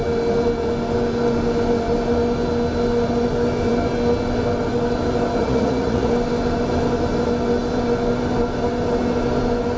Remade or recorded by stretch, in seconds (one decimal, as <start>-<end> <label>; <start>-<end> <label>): 0.0-5.4 recorded; 5.4-6.1 remade; 6.1-9.8 recorded